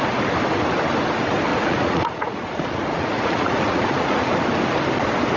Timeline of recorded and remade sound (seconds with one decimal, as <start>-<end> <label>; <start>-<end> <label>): 0.0-1.5 recorded; 1.5-4.3 remade; 4.3-5.4 recorded